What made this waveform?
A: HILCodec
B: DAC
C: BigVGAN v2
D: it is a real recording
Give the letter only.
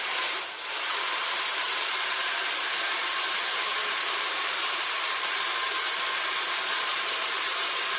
C